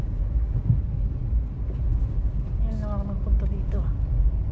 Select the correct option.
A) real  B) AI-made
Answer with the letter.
A